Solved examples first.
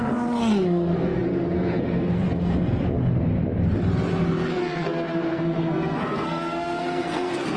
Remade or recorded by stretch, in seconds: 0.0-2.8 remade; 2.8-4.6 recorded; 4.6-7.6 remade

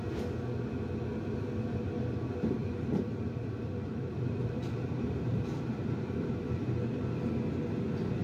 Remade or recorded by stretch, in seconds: 0.0-2.6 recorded; 2.6-6.3 remade; 6.3-8.2 recorded

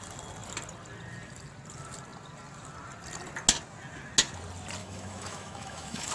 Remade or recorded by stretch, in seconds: 0.0-4.8 recorded; 4.8-6.1 remade

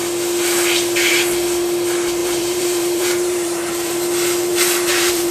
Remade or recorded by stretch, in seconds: 0.0-2.2 recorded; 2.2-4.0 remade; 4.0-4.5 recorded; 4.5-5.3 remade

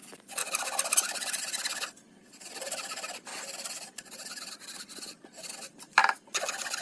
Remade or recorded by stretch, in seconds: 0.0-3.3 recorded; 3.3-4.2 remade; 4.2-6.0 recorded; 6.0-6.8 remade

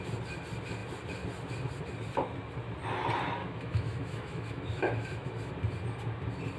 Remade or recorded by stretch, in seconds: 0.0-3.4 recorded; 3.4-5.5 remade; 5.5-6.6 recorded